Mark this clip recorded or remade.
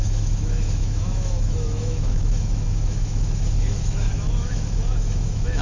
remade